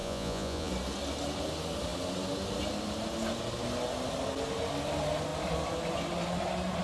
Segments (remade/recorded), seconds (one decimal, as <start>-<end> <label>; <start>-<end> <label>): 0.0-0.7 remade; 0.7-6.8 recorded